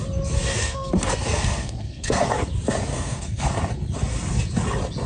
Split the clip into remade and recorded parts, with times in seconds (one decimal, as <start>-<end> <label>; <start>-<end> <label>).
0.0-0.6 recorded; 0.6-2.3 remade; 2.3-2.9 recorded; 2.9-3.6 remade; 3.6-5.1 recorded